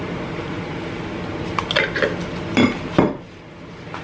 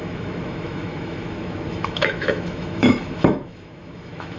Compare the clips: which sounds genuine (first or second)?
first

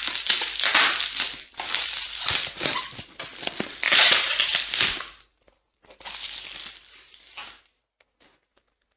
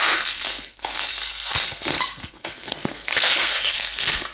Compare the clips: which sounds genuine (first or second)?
first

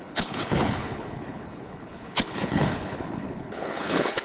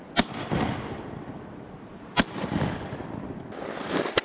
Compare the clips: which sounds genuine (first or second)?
second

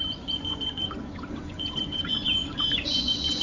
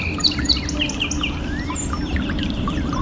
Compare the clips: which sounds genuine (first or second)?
second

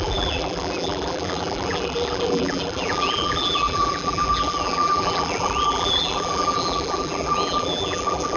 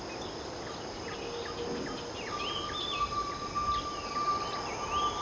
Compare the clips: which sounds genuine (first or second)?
second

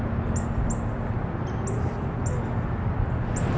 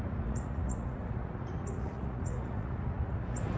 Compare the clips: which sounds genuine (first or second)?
first